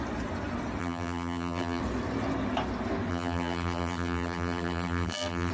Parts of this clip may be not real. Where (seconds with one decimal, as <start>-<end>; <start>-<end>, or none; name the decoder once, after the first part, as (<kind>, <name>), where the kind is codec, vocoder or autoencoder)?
0.8-1.8 (vocoder, BigVGAN v2); 3.1-5.5